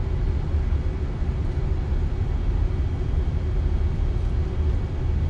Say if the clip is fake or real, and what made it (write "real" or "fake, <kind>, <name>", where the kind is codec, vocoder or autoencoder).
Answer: real